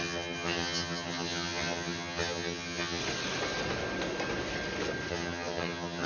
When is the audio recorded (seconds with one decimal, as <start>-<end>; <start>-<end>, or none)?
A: 3.0-5.1